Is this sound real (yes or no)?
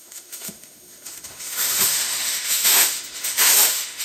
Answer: no